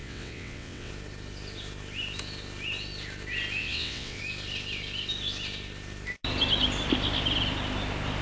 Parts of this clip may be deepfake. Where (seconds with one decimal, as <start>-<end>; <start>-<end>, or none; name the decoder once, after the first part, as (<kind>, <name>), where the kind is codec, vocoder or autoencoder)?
0.0-0.9 (vocoder, WaveNeXt); 3.6-4.2